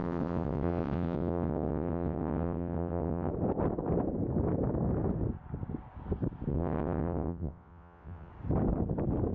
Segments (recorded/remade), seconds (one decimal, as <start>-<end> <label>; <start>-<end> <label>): 0.0-3.3 remade; 3.3-6.5 recorded; 6.5-8.3 remade; 8.3-9.3 recorded